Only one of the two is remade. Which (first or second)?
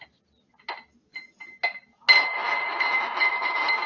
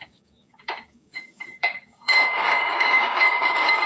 second